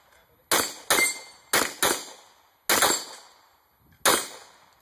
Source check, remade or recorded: recorded